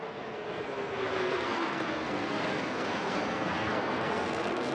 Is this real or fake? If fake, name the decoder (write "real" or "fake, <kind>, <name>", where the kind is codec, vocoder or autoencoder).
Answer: fake, codec, SNAC